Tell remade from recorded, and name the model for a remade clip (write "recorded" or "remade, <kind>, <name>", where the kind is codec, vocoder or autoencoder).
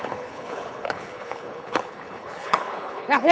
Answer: remade, codec, HILCodec